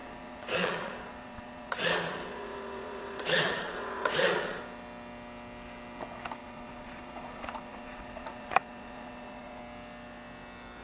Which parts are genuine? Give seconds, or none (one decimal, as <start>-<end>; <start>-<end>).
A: 4.6-6.4; 9.6-10.8